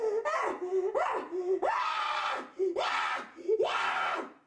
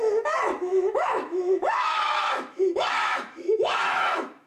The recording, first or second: first